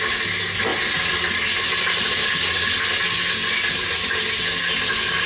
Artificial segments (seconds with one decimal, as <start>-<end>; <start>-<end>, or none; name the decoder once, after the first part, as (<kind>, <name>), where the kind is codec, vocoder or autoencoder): none